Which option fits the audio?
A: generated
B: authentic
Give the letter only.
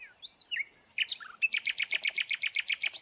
B